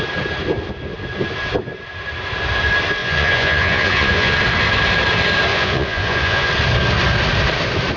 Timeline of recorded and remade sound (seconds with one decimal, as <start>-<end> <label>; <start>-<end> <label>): 0.0-3.0 recorded; 3.0-4.4 remade; 4.4-5.5 recorded; 5.5-6.5 remade; 6.5-8.0 recorded